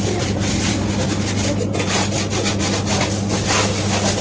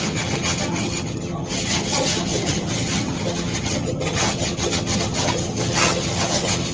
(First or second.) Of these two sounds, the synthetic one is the second